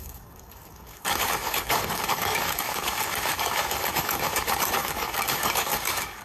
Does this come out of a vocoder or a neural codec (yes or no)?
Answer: yes